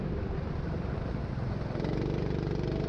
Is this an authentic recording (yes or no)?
yes